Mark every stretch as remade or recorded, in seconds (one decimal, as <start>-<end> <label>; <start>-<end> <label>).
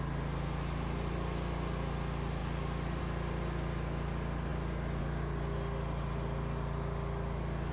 0.0-7.7 recorded